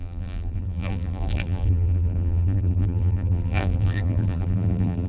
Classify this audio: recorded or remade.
remade